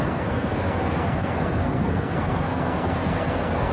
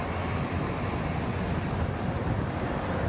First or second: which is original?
second